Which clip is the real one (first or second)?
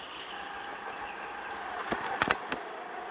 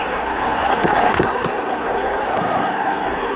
first